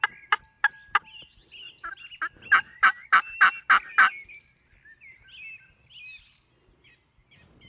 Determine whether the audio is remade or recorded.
recorded